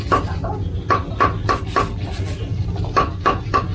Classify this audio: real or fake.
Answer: real